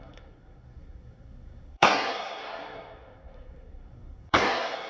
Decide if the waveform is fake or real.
fake